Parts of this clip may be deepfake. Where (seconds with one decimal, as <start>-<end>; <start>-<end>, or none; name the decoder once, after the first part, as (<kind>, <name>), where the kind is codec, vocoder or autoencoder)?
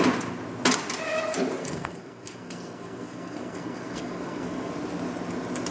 1.6-4.7 (codec, SNAC)